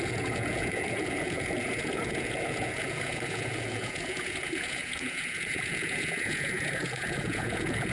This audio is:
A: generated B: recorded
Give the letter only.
A